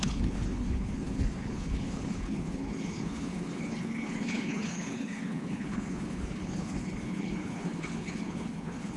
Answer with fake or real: fake